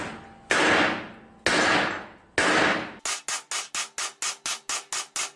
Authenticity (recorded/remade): recorded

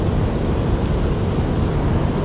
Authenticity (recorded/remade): recorded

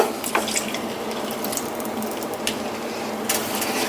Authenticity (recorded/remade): remade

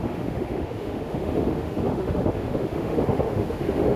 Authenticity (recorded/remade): remade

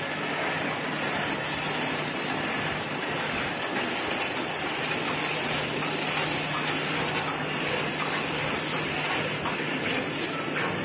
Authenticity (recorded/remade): recorded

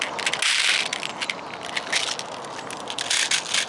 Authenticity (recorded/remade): recorded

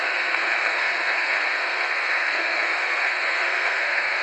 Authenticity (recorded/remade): remade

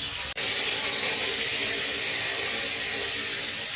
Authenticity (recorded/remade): recorded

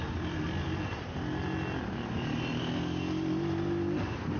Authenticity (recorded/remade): recorded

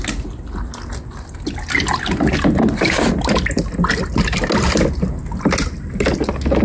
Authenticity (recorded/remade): recorded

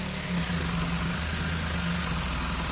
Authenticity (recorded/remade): recorded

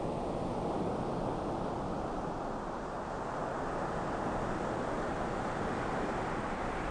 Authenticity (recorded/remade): recorded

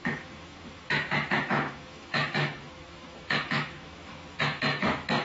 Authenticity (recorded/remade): remade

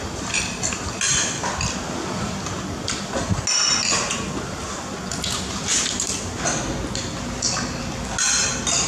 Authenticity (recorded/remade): recorded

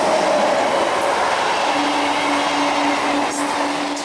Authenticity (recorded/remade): recorded